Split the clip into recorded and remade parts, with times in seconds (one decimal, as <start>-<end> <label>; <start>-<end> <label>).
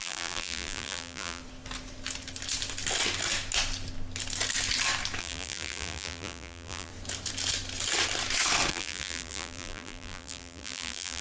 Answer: 0.0-1.4 remade; 1.4-5.2 recorded; 5.2-6.9 remade; 6.9-8.7 recorded; 8.7-11.2 remade